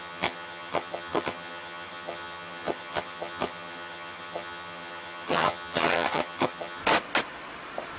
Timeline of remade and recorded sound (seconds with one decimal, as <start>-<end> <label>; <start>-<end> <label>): 0.0-6.8 remade; 6.8-8.0 recorded